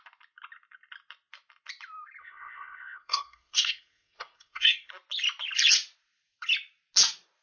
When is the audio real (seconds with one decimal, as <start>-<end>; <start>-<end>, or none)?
0.0-2.2; 4.9-7.4